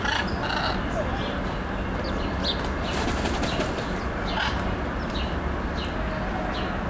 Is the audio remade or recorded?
recorded